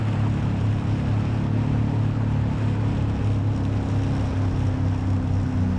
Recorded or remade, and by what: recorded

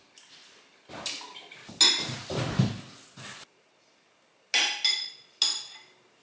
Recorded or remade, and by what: recorded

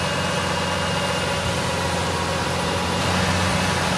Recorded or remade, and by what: recorded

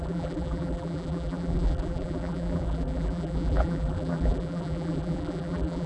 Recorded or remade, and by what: remade, vocoder, BigVGAN v2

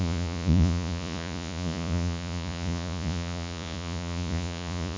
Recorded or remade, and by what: remade, vocoder, Vocos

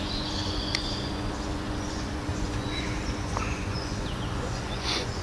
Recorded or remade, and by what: remade, vocoder, Vocos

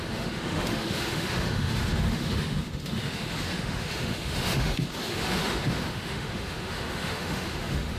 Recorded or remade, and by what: remade, autoencoder, DAC-VAE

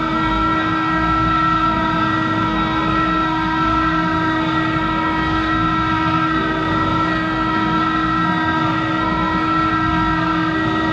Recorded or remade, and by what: remade, codec, SNAC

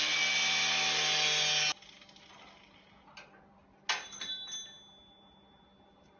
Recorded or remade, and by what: recorded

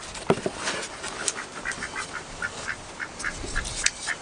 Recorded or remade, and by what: recorded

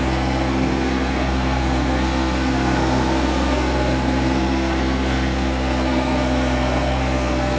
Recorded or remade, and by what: remade, codec, SNAC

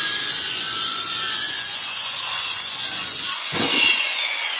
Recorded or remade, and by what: remade, vocoder, Vocos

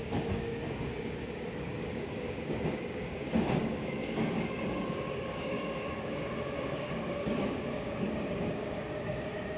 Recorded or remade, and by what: remade, codec, DAC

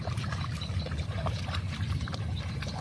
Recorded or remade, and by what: recorded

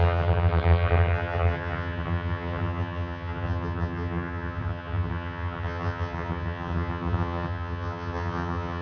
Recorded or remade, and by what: remade, vocoder, HiFi-GAN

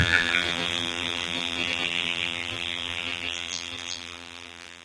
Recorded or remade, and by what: remade, vocoder, BigVGAN v2